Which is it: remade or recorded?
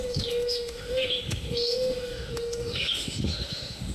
remade